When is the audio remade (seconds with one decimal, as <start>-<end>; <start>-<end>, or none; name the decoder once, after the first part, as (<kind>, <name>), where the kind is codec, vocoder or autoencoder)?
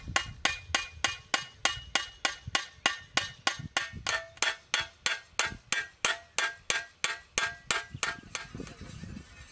none